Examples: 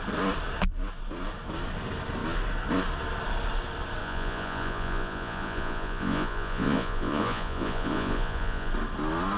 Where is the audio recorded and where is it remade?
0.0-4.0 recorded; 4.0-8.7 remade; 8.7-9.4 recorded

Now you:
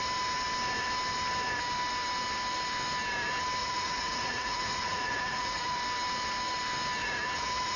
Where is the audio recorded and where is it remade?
0.0-3.6 recorded; 3.6-5.8 remade; 5.8-7.0 recorded; 7.0-7.8 remade

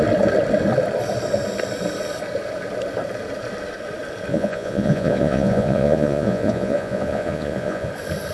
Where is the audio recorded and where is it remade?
0.0-4.3 recorded; 4.3-7.9 remade; 7.9-8.3 recorded